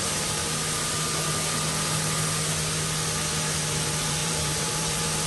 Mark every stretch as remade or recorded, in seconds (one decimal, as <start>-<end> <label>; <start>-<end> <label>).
0.0-0.4 remade; 0.4-3.6 recorded; 3.6-5.3 remade